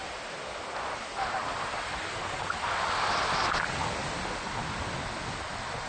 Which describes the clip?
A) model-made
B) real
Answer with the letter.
B